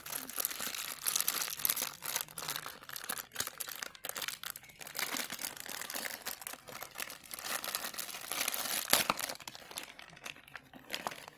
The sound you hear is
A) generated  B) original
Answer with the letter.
B